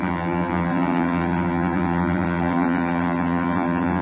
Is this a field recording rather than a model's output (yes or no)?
no